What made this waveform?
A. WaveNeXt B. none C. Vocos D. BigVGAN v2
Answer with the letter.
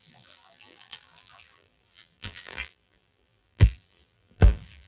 D